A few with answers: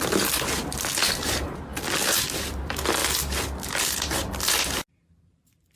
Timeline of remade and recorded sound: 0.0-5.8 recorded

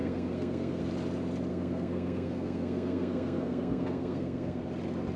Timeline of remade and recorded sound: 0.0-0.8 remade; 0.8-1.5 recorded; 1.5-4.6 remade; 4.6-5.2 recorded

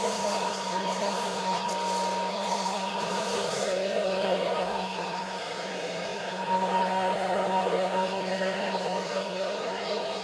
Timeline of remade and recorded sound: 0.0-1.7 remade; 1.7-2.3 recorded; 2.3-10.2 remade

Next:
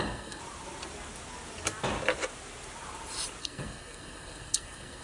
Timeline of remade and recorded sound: 0.0-0.4 remade; 0.4-3.4 recorded; 3.4-5.0 remade

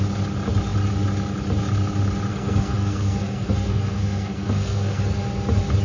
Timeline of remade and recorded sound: 0.0-2.3 recorded; 2.3-5.0 remade; 5.0-5.8 recorded